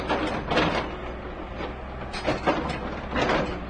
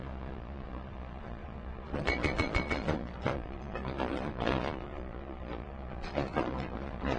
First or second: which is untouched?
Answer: first